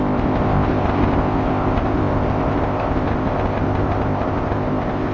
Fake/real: fake